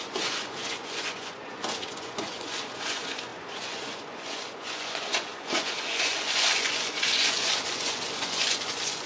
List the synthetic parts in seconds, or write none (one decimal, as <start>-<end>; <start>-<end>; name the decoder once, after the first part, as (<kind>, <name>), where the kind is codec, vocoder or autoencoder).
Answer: 0.0-9.1 (vocoder, Vocos)